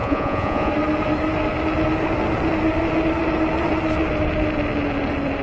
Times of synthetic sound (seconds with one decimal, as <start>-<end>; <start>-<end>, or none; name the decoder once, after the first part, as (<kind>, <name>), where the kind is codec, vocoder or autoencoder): 0.0-0.7 (vocoder, Vocos)